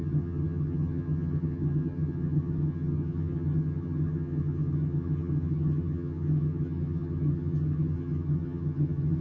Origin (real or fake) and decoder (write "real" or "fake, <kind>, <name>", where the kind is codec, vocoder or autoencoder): fake, vocoder, HiFi-GAN